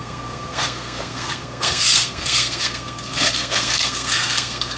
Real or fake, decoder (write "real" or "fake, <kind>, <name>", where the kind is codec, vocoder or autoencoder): fake, codec, SNAC